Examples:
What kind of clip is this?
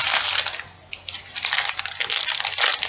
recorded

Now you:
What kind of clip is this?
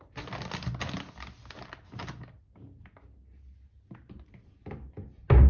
recorded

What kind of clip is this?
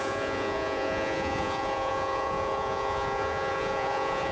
remade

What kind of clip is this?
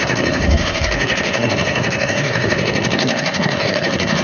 remade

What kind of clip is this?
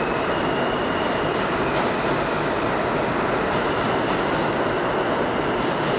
recorded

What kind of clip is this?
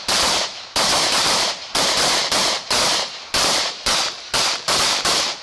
remade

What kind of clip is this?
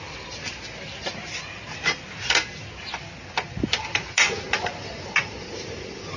recorded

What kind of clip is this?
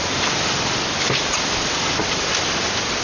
recorded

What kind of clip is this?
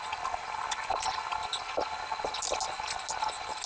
recorded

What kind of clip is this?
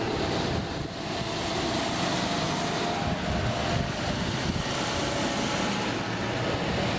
recorded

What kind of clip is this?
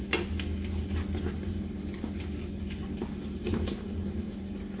recorded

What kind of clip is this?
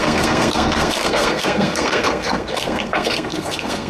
remade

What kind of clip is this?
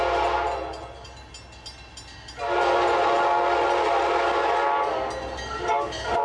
recorded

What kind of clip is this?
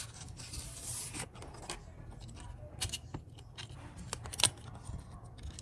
recorded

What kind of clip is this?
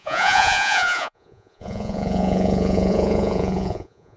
remade